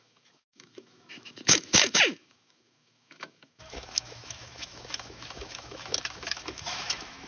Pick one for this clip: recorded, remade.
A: remade